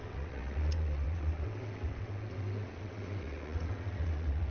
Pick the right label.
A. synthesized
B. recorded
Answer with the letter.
A